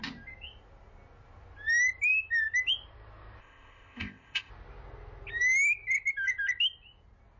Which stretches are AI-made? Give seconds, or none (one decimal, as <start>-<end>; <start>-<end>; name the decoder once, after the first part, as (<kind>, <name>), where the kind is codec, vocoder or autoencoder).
3.4-4.5 (codec, ZipCodec)